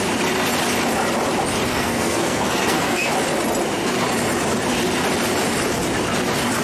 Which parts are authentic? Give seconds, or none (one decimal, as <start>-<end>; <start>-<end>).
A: 0.0-1.7; 3.1-6.6

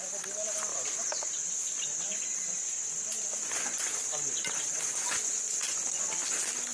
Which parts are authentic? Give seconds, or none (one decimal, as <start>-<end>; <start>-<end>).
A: 0.0-4.7; 6.0-6.7

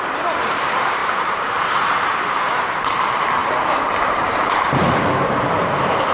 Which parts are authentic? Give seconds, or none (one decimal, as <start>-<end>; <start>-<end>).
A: none